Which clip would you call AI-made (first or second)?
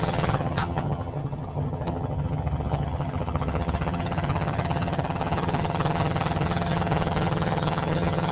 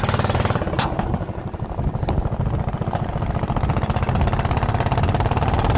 first